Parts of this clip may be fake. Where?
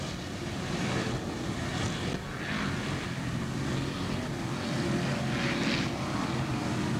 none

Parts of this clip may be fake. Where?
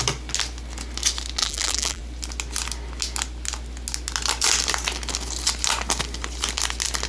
1.4-2.0 (vocoder, BigVGAN v2)